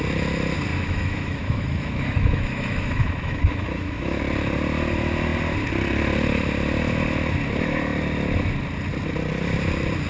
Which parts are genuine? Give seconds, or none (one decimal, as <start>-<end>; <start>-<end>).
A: 0.0-0.7; 4.2-10.1